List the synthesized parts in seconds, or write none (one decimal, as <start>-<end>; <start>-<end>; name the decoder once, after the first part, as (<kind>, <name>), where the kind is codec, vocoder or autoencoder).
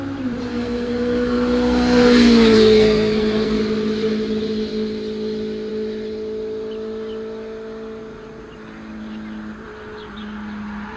0.5-3.6 (codec, SNAC)